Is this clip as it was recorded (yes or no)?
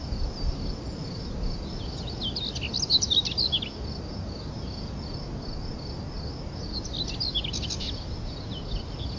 yes